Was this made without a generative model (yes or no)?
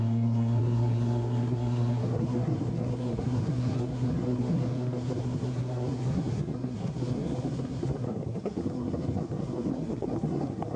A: no